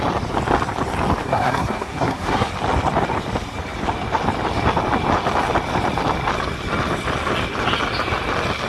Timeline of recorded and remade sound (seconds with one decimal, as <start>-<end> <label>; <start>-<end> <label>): 0.0-1.2 recorded; 1.2-2.5 remade; 2.5-8.7 recorded